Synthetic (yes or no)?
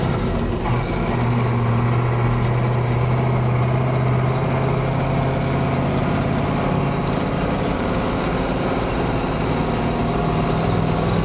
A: no